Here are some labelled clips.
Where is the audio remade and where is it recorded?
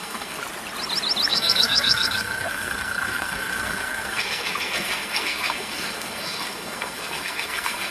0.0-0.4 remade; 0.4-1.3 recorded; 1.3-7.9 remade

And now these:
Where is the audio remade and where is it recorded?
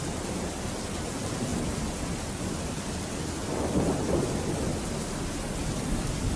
0.0-6.4 recorded